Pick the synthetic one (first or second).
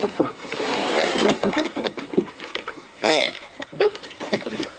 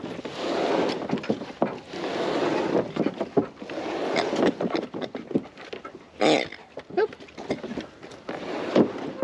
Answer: first